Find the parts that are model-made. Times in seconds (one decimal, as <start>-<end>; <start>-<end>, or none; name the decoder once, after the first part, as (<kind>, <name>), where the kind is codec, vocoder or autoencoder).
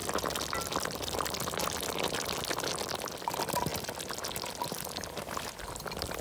none